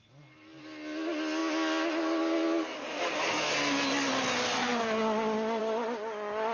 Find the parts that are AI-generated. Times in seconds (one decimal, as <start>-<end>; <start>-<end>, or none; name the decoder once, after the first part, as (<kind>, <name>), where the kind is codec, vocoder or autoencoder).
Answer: none